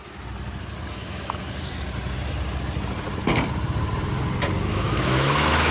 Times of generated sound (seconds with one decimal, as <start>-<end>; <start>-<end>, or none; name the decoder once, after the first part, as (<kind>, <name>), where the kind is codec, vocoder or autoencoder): 0.9-1.4 (autoencoder, DAC-VAE); 4.7-5.7